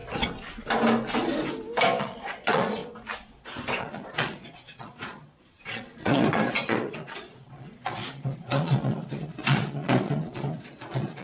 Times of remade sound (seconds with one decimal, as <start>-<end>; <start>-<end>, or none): 2.0-2.8; 3.8-11.2